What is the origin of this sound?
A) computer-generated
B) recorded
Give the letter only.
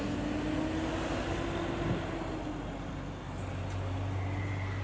B